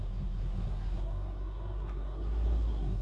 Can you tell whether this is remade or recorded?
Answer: remade